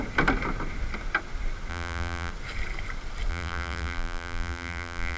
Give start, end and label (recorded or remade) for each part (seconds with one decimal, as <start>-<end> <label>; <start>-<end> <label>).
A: 0.0-1.7 recorded; 1.7-2.3 remade; 2.3-3.3 recorded; 3.3-5.2 remade